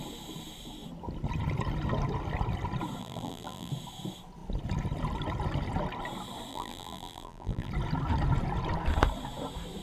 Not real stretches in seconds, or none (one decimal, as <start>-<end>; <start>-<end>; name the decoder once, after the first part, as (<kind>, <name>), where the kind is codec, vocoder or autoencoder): 3.0-3.7 (vocoder, BigVGAN v2); 6.5-7.7